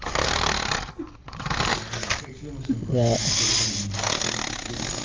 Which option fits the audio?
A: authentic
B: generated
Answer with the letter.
A